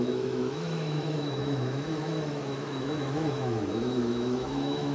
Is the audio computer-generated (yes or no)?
yes